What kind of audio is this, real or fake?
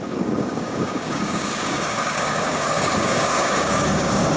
fake